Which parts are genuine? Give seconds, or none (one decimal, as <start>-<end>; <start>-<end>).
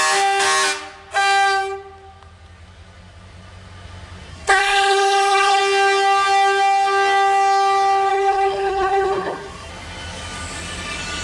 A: 0.0-4.3; 5.6-8.1; 9.7-11.2